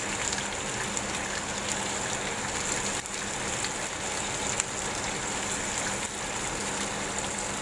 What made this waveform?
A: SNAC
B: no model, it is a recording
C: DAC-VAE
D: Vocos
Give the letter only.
B